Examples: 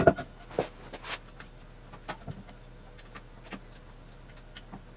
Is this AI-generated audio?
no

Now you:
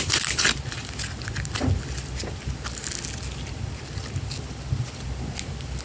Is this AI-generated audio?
no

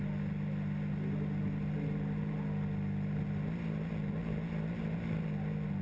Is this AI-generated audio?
no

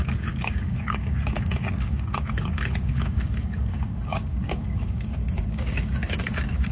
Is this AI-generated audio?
yes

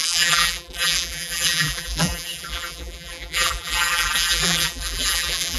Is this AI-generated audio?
yes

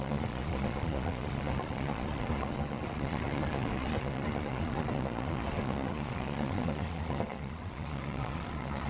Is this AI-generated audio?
yes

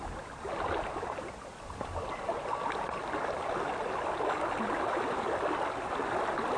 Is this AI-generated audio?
no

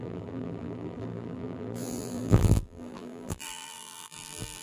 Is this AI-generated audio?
yes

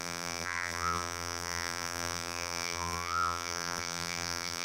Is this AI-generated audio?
yes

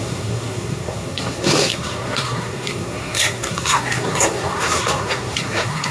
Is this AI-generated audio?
yes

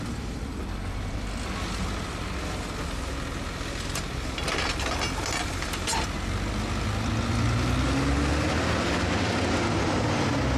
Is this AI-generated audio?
no